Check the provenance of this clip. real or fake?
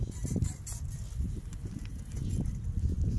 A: real